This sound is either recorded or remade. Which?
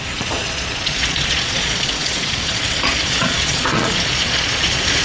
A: remade